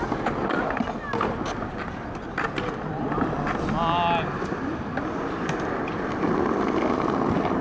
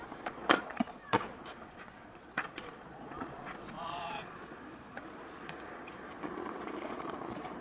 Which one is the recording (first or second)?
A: first